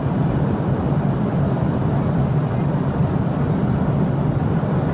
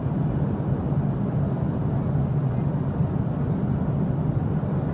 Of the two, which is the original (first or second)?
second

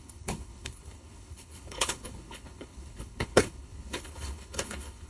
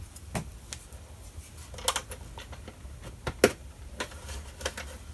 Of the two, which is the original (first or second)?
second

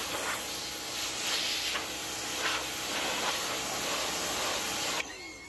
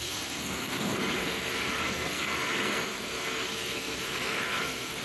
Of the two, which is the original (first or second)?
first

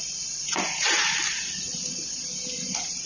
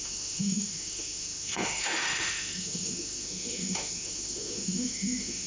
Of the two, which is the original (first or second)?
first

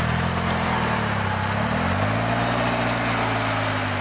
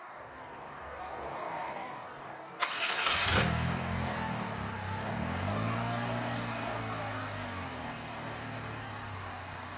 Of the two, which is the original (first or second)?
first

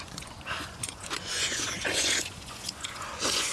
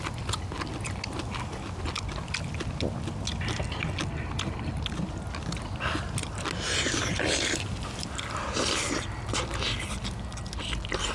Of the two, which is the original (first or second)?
second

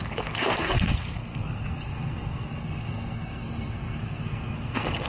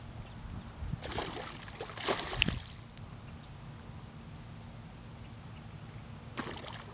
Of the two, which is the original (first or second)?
second